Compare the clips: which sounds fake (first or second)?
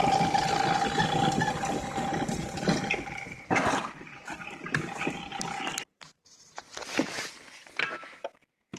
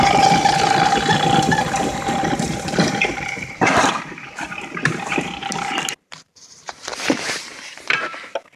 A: second